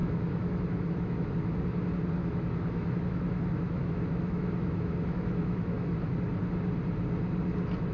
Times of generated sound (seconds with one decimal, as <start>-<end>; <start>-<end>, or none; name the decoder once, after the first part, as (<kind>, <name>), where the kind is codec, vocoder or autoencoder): 0.0-1.3 (autoencoder, DAC-VAE); 2.2-5.9